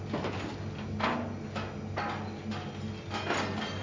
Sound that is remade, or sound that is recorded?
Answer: recorded